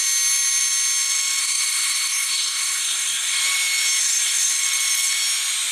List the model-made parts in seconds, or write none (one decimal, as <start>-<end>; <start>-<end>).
1.4-3.4; 4.0-4.5